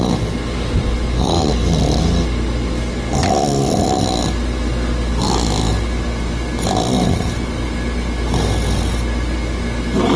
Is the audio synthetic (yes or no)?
no